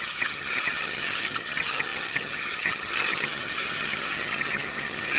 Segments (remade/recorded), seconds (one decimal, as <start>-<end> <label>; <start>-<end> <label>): 0.0-5.2 remade